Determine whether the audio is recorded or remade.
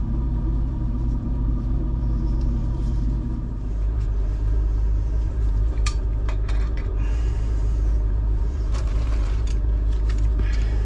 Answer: remade